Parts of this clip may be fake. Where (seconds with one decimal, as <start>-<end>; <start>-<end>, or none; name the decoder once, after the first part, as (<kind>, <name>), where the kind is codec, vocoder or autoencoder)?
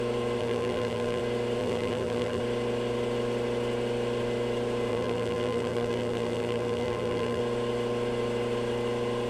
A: 0.4-1.2 (vocoder, BigVGAN v2); 1.6-2.4; 4.9-7.4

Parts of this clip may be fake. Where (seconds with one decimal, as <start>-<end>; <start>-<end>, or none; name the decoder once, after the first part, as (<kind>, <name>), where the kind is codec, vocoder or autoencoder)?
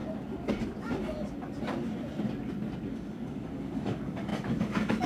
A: 2.9-5.1 (codec, DAC)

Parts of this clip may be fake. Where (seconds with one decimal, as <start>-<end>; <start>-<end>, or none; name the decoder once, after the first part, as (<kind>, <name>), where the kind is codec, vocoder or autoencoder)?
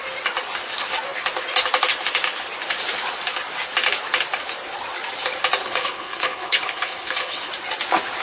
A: 5.6-7.5 (codec, HILCodec)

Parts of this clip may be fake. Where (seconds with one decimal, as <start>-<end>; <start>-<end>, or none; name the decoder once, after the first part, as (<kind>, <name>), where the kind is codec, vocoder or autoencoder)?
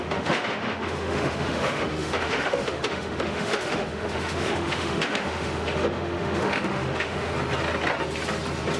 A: 0.0-7.3 (autoencoder, DAC-VAE)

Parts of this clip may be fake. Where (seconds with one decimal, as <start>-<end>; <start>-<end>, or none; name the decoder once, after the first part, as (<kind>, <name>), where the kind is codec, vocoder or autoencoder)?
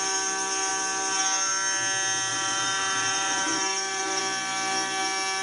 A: 2.3-4.2 (vocoder, BigVGAN v2)